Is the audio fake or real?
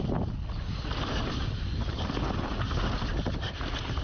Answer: real